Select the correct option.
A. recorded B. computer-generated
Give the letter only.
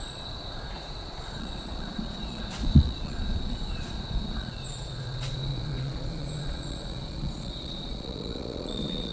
B